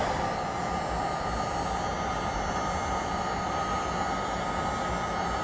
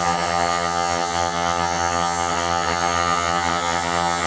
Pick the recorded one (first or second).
first